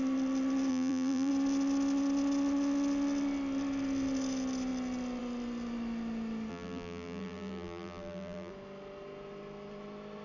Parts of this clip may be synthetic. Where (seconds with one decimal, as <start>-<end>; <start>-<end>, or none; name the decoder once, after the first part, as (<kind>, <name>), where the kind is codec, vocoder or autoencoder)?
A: 0.7-1.3 (vocoder, BigVGAN v2); 6.5-8.5